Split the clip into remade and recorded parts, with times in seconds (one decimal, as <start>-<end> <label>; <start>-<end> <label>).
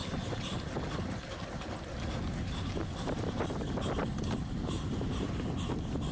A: 0.0-6.1 recorded